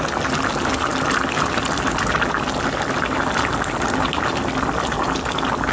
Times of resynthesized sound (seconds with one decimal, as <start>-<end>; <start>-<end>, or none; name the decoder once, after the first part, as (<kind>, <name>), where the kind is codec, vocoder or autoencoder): none